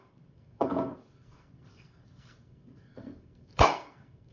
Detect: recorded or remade remade